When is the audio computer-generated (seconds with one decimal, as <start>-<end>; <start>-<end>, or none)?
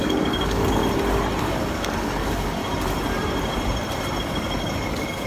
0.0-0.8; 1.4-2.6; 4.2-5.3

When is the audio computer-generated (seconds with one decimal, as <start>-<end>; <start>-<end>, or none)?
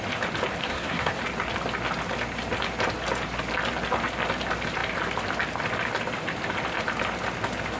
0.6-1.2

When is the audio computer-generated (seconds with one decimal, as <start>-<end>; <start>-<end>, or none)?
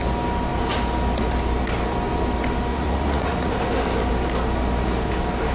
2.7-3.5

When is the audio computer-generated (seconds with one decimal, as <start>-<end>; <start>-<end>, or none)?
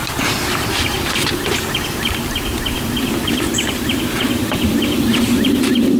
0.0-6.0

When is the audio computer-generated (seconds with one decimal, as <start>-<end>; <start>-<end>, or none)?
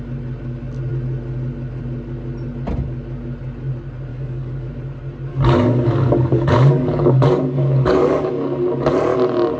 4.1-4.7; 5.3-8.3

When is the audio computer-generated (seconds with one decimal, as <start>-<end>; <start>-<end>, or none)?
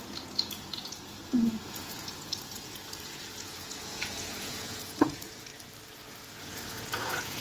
0.0-5.5; 6.3-7.4